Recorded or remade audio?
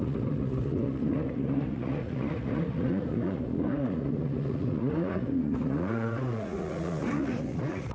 remade